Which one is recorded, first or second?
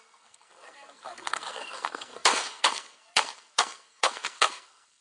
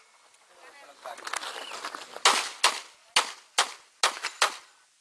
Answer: second